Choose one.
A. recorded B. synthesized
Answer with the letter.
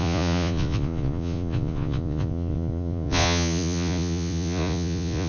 B